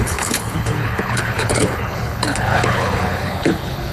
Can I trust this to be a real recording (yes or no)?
no